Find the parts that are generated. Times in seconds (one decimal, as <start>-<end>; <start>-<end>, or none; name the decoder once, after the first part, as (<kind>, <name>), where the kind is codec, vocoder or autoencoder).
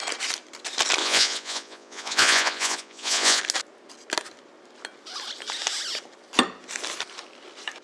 1.0-3.4 (vocoder, Vocos)